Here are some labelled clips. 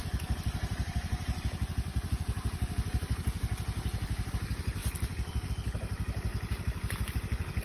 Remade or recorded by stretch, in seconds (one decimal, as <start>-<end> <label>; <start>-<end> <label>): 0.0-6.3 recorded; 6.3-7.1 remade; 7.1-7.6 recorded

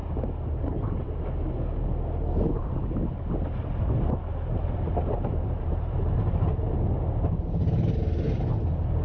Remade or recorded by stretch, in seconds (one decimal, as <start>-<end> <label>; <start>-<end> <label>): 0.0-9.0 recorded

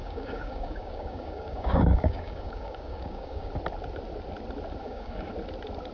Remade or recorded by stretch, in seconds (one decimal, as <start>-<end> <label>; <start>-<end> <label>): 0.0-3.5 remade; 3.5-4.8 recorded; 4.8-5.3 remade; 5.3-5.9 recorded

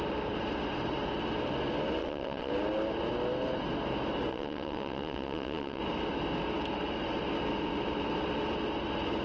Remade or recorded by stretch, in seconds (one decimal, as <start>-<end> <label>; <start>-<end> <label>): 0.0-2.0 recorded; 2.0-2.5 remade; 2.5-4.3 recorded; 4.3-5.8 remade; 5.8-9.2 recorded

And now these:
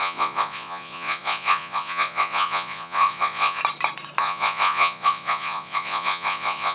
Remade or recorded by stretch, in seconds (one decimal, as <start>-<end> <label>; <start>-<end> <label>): 0.0-3.6 remade; 3.6-4.2 recorded; 4.2-6.7 remade

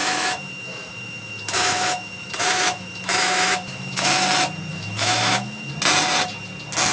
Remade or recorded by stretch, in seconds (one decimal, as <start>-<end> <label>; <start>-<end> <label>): 0.0-4.1 remade; 4.1-4.7 recorded; 4.7-5.7 remade; 5.7-6.9 recorded